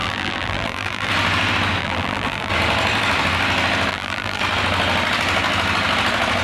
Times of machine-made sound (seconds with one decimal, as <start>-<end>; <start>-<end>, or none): 0.0-1.1; 1.8-2.5; 3.9-4.4